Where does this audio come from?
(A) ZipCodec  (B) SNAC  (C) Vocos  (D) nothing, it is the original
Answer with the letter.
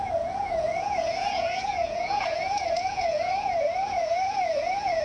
C